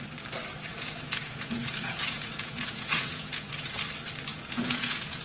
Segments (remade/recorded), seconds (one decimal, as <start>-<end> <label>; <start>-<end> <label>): 0.0-0.7 recorded; 0.7-3.8 remade; 3.8-4.3 recorded; 4.3-5.2 remade